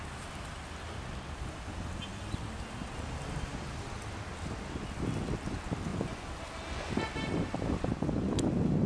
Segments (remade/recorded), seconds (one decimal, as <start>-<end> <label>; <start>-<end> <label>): 0.0-5.9 recorded; 5.9-6.4 remade; 6.4-8.9 recorded